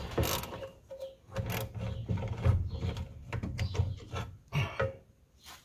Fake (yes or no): no